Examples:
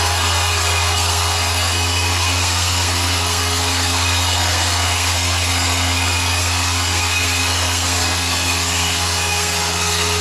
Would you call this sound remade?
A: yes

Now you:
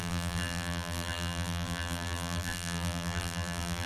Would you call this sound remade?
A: yes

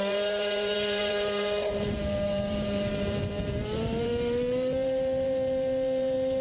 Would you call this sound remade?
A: yes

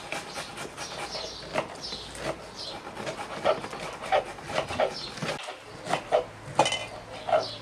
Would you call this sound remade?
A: no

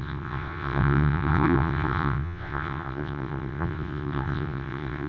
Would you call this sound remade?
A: yes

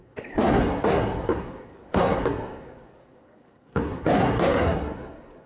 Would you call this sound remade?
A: yes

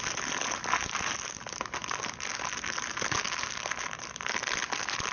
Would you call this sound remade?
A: no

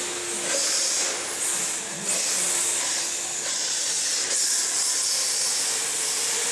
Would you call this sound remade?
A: no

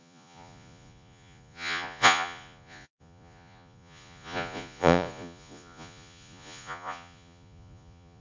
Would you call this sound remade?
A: yes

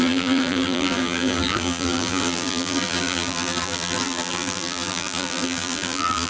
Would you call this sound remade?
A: yes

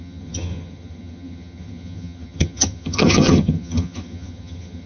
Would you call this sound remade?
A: yes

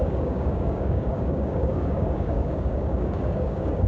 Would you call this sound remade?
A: yes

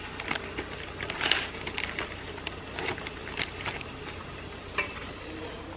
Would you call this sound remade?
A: no